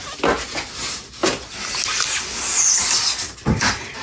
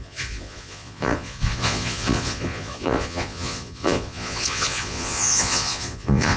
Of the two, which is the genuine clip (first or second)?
first